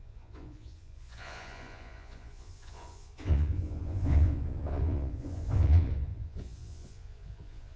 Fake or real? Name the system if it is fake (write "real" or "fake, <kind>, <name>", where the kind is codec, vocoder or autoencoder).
fake, vocoder, Vocos